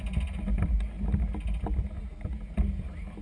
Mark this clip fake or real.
real